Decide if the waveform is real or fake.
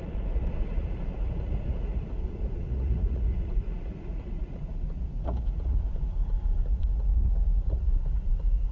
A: fake